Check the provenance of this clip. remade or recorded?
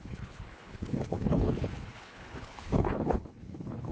remade